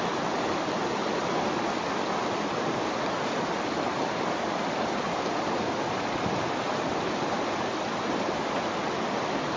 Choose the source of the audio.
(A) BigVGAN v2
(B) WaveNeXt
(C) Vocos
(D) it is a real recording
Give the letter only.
D